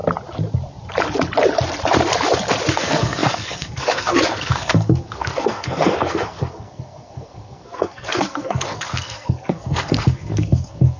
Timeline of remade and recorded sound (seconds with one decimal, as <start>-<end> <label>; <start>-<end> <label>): 0.0-2.7 recorded; 2.7-11.0 remade

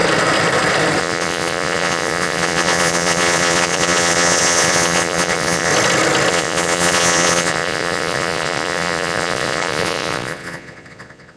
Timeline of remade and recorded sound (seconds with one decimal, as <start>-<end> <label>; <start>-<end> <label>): 0.0-1.0 recorded; 1.0-5.7 remade; 5.7-6.3 recorded; 6.3-11.4 remade

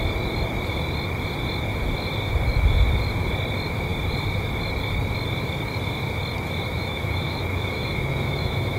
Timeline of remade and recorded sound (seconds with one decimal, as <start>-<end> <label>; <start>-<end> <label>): 0.0-6.7 recorded; 6.7-8.8 remade

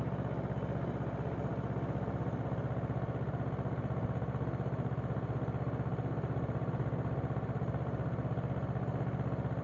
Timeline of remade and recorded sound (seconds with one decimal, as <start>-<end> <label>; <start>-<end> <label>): 0.0-9.6 recorded

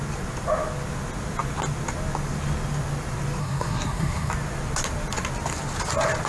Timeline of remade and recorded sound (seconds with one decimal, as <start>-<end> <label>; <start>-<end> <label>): 0.0-3.4 recorded; 3.4-4.3 remade; 4.3-6.3 recorded

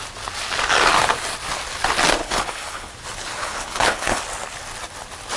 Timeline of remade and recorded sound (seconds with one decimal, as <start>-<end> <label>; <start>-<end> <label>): 0.0-2.2 recorded; 2.2-2.9 remade; 2.9-3.4 recorded; 3.4-4.2 remade; 4.2-5.4 recorded